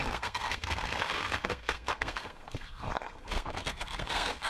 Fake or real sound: fake